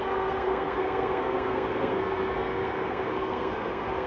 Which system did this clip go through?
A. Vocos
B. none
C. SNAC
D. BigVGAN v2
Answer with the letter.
C